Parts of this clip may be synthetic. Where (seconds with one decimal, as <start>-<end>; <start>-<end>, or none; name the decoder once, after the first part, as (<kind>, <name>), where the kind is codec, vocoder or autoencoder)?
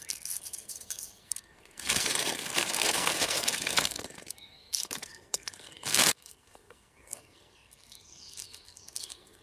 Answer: 0.0-9.4 (codec, SNAC)